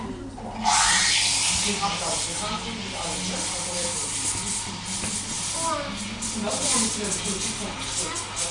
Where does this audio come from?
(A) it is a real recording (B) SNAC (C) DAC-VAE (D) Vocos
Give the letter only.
A